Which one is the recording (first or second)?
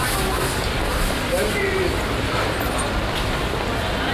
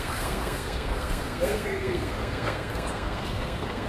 first